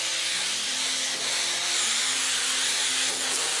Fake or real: real